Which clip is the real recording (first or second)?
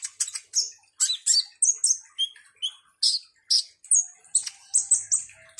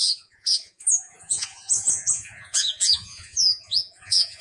first